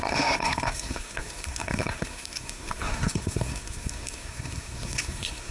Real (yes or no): no